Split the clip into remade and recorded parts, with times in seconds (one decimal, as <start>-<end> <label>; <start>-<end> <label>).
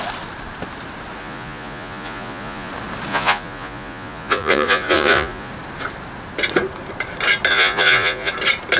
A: 0.0-1.2 recorded; 1.2-2.7 remade; 2.7-3.1 recorded; 3.1-5.5 remade; 5.5-7.5 recorded; 7.5-8.3 remade; 8.3-8.8 recorded